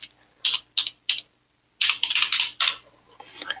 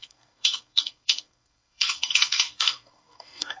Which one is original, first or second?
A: first